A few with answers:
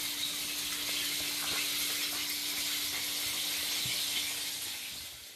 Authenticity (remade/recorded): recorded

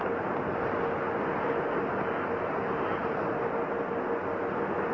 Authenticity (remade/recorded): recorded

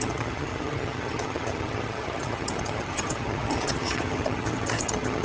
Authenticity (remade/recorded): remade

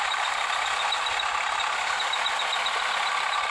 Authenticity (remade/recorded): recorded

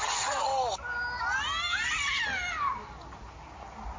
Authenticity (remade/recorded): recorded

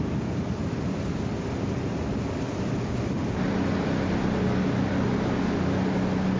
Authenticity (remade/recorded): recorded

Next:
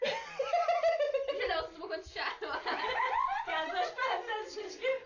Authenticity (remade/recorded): recorded